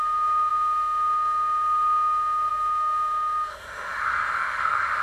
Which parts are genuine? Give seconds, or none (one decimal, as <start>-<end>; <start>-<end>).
none